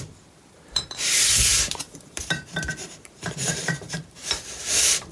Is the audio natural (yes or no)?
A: no